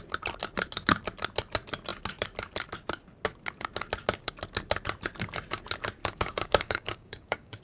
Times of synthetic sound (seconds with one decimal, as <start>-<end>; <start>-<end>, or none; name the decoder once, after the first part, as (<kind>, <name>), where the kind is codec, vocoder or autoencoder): 6.0-7.6 (codec, DAC)